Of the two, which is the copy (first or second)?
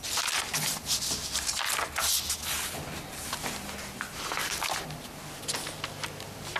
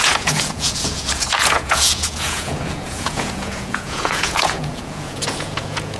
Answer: second